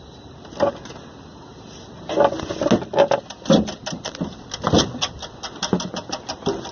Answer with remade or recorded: recorded